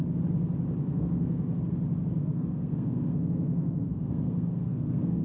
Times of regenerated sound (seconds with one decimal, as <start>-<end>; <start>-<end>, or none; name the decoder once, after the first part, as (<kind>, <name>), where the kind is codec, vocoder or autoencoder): 0.8-1.6 (codec, SNAC); 2.2-5.2